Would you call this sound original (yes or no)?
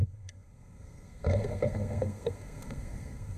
no